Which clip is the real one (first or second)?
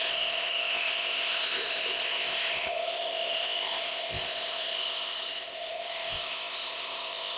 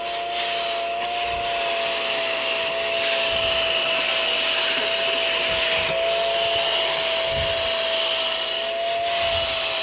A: second